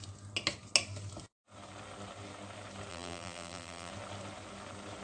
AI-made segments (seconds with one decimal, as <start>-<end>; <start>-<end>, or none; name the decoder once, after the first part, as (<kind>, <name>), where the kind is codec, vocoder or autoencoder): 2.9-3.9 (vocoder, BigVGAN v2)